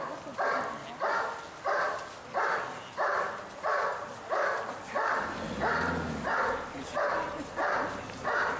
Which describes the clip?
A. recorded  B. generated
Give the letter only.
A